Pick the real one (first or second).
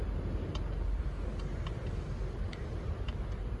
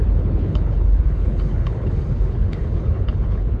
first